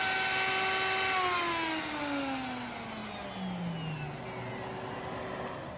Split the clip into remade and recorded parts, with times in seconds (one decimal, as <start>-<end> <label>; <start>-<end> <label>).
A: 0.0-5.8 recorded